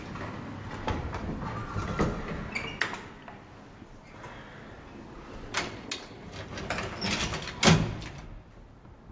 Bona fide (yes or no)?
yes